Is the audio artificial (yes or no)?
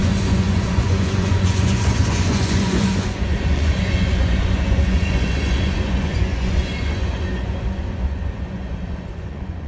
yes